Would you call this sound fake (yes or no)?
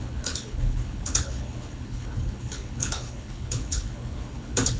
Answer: yes